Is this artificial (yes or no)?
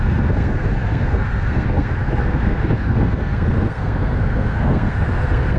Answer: yes